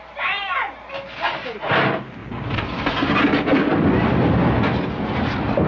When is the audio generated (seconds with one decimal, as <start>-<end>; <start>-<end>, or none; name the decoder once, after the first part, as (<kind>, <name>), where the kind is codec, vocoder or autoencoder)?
none